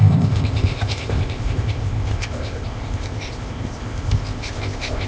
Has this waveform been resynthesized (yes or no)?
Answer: yes